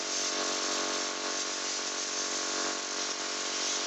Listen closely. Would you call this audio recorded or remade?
recorded